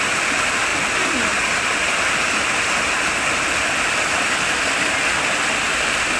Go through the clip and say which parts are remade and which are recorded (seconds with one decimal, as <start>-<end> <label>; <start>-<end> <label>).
0.0-6.2 recorded